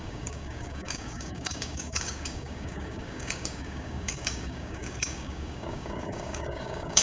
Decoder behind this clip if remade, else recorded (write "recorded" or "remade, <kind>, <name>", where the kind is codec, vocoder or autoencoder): remade, codec, DAC